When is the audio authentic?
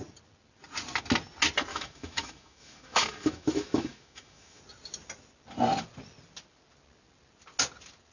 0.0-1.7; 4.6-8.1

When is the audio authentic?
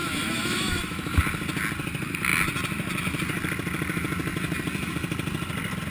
1.2-5.9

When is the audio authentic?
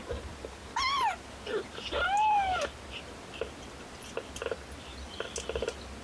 0.0-6.0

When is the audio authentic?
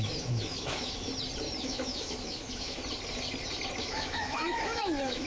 1.1-1.6; 2.8-3.8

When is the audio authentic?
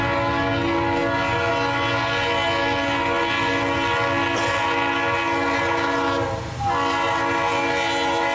0.0-8.3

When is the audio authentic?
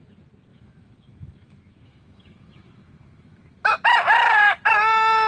0.0-0.5; 3.7-5.3